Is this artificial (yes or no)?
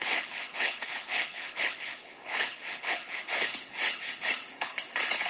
yes